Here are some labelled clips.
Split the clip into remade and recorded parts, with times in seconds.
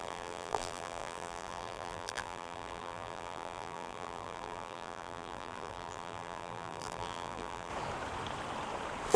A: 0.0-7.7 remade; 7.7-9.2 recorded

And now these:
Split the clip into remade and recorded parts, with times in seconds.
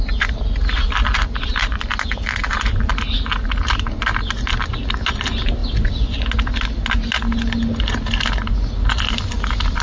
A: 0.0-9.8 recorded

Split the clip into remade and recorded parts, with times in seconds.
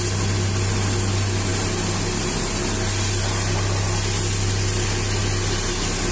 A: 0.0-6.1 recorded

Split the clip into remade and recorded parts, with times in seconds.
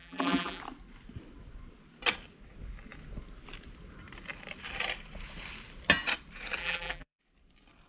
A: 0.0-0.6 remade; 0.6-6.6 recorded; 6.6-7.2 remade; 7.2-7.9 recorded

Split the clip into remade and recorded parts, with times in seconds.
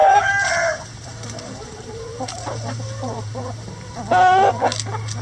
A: 0.0-0.5 remade; 0.5-0.9 recorded; 0.9-4.0 remade; 4.0-5.2 recorded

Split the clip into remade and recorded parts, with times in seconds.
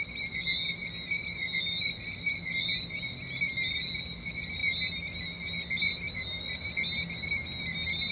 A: 0.0-8.1 recorded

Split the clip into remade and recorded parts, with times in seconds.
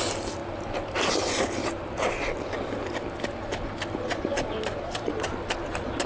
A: 0.0-0.4 recorded; 0.4-1.3 remade; 1.3-4.7 recorded; 4.7-5.3 remade; 5.3-6.1 recorded